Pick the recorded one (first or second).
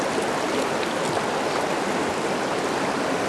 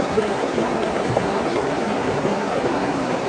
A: first